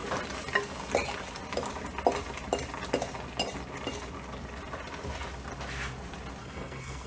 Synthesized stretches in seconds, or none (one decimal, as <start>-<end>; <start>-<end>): 6.4-7.1